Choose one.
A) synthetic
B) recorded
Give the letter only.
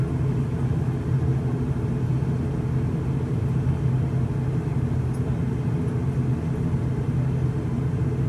B